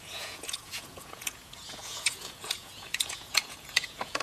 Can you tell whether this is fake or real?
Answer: fake